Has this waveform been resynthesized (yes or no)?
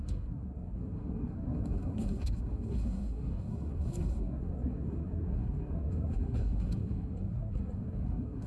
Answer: yes